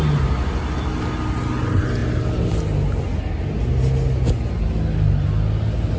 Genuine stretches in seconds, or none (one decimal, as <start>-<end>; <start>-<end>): 0.0-6.0